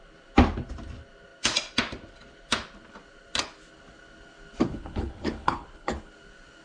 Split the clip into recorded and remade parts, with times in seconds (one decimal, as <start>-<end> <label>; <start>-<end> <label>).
0.0-4.7 recorded; 4.7-6.1 remade; 6.1-6.6 recorded

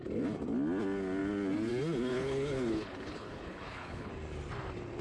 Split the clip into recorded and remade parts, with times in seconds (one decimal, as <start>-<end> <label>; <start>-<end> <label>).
0.0-2.1 recorded; 2.1-4.1 remade; 4.1-5.0 recorded

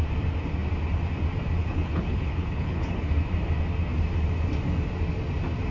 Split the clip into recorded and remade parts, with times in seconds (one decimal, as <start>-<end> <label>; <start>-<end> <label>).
0.0-1.6 recorded; 1.6-3.1 remade; 3.1-5.7 recorded

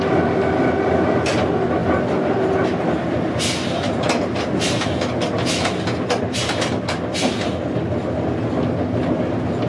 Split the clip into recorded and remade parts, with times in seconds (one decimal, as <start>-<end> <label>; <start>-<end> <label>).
0.0-9.7 recorded

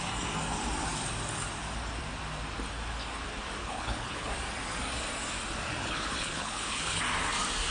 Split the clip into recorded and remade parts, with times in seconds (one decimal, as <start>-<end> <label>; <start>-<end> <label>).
0.0-3.6 recorded; 3.6-4.3 remade; 4.3-5.8 recorded; 5.8-7.0 remade; 7.0-7.7 recorded

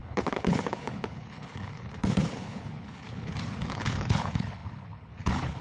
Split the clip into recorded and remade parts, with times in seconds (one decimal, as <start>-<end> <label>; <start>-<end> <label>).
0.0-5.6 remade